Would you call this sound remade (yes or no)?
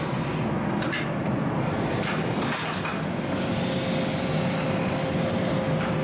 no